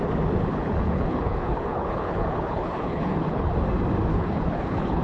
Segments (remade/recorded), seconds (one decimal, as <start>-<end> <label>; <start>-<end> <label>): 0.0-0.5 recorded; 0.5-3.5 remade; 3.5-4.1 recorded; 4.1-5.0 remade